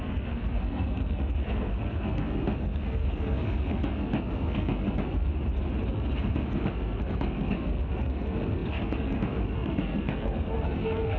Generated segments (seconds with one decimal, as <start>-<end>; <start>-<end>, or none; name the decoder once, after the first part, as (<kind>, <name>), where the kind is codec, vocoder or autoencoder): 0.0-5.3 (codec, SNAC); 5.9-11.2